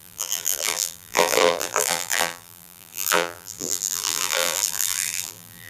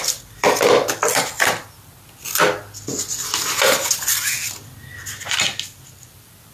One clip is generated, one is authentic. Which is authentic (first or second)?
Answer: second